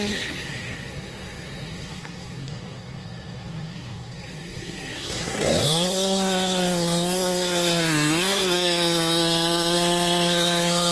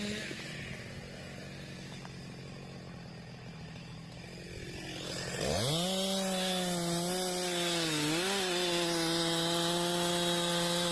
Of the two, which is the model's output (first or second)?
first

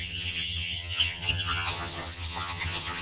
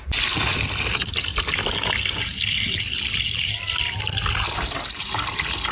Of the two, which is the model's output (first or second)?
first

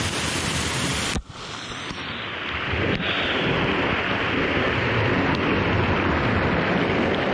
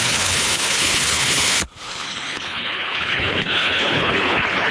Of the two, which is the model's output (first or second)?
second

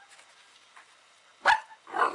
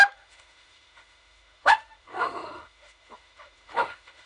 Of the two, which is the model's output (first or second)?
second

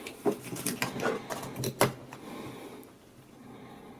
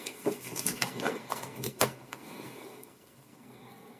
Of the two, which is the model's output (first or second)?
second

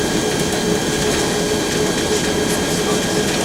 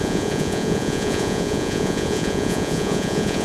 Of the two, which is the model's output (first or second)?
second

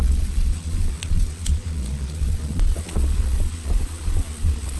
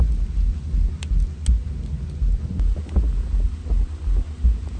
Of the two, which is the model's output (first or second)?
first